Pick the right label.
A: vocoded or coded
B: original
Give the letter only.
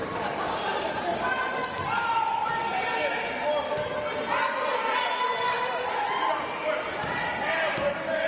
B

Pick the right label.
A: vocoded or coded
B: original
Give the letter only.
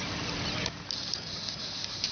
B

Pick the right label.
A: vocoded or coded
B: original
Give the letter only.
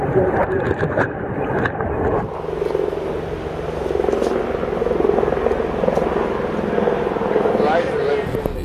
B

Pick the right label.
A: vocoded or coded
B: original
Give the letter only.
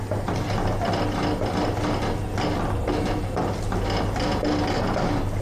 B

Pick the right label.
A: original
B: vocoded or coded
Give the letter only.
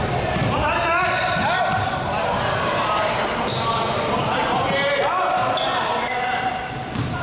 A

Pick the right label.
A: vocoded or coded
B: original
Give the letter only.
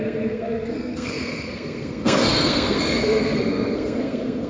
A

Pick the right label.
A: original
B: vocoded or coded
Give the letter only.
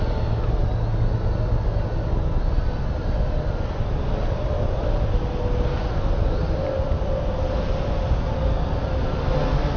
A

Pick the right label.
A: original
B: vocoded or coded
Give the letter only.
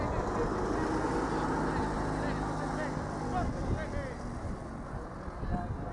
A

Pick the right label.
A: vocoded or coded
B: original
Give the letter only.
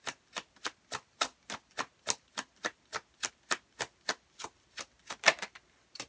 B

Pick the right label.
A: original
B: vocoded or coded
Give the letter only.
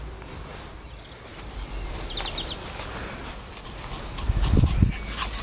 A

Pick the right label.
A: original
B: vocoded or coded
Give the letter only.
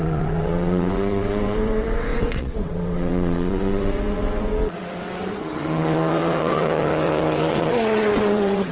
B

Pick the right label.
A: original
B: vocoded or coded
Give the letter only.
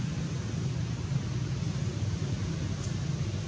A